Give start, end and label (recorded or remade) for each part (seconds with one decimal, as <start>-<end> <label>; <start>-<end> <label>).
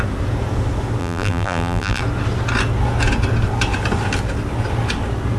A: 0.0-1.0 recorded; 1.0-2.0 remade; 2.0-5.4 recorded